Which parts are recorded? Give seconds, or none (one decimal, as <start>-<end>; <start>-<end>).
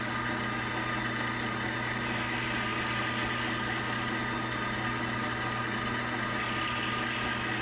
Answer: 0.0-7.6